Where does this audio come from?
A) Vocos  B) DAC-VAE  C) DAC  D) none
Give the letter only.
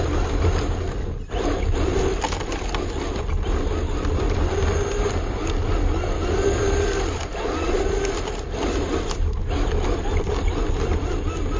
D